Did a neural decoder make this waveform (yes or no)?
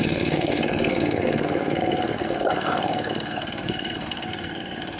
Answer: yes